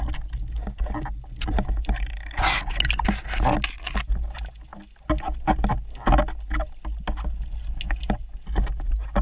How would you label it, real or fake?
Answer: real